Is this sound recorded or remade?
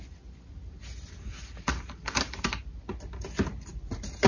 recorded